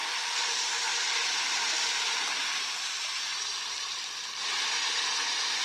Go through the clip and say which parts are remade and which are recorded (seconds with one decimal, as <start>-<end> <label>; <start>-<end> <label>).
0.0-3.4 recorded; 3.4-5.6 remade